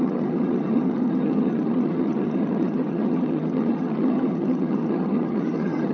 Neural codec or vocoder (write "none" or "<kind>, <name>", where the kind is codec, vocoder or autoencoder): vocoder, HiFi-GAN